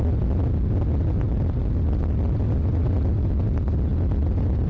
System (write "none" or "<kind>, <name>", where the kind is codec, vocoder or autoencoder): none